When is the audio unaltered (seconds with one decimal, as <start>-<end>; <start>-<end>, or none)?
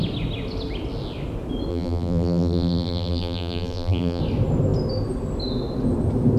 0.0-1.7; 4.2-6.4